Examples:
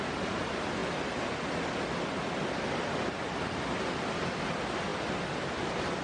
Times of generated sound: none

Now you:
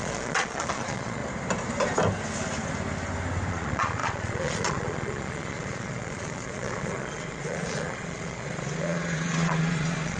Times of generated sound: 0.0-1.2; 3.5-10.2

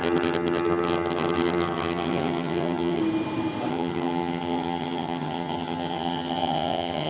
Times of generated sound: 0.0-3.0; 3.7-7.1

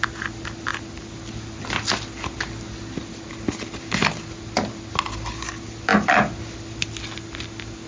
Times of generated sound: none

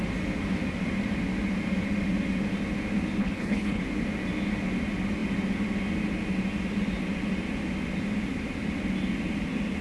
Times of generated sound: 3.2-3.8